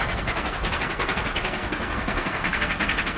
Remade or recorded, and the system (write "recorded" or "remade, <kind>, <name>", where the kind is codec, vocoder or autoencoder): remade, codec, SNAC